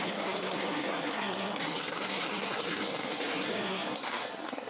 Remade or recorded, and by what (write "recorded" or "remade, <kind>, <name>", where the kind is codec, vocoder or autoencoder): remade, codec, SNAC